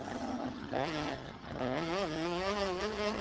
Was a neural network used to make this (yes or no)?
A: yes